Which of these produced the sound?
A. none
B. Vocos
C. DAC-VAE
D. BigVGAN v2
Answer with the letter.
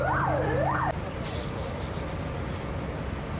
D